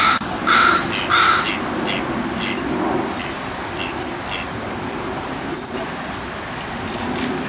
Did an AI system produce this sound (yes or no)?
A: no